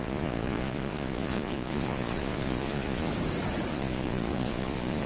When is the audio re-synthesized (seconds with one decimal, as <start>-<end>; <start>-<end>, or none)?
0.0-3.1; 3.7-5.1